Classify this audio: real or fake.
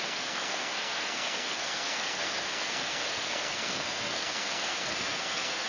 fake